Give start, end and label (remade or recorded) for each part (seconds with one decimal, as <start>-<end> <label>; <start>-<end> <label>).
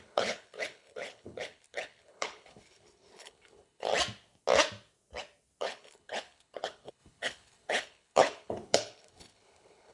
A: 0.0-3.9 remade; 3.9-5.6 recorded; 5.6-9.9 remade